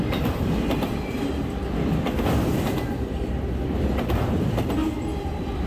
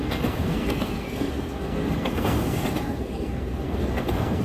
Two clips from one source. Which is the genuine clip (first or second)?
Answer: first